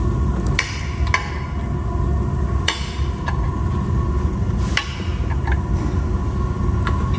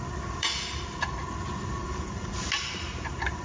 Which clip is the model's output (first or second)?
second